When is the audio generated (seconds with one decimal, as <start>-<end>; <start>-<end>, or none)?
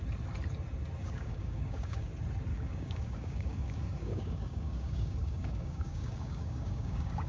1.0-2.1; 2.5-7.3